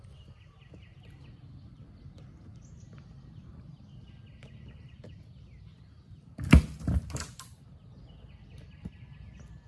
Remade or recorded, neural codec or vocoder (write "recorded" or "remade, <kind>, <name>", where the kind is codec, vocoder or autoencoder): recorded